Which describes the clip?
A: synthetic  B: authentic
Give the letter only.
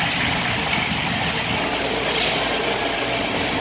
B